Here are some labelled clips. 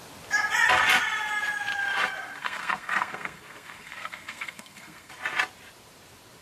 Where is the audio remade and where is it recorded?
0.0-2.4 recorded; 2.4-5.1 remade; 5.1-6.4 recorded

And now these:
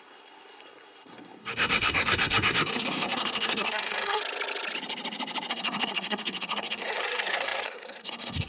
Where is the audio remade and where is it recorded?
0.0-4.2 remade; 4.2-5.5 recorded; 5.5-8.5 remade

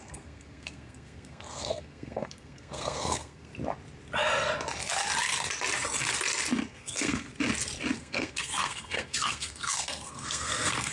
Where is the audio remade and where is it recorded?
0.0-3.5 remade; 3.5-6.7 recorded; 6.7-7.3 remade; 7.3-8.0 recorded; 8.0-10.9 remade

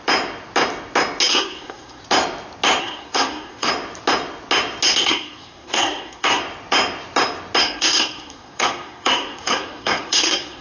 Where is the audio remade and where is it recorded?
0.0-1.3 recorded; 1.3-2.0 remade; 2.0-2.8 recorded; 2.8-3.7 remade; 3.7-5.0 recorded; 5.0-6.4 remade; 6.4-7.6 recorded; 7.6-10.6 remade